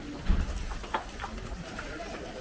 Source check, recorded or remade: recorded